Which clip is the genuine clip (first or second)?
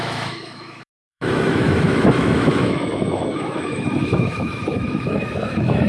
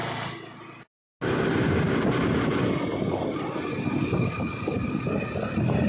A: second